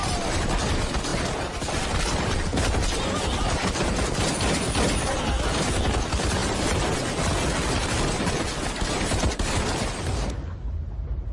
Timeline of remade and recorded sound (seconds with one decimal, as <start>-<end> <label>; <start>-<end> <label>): 0.0-11.3 recorded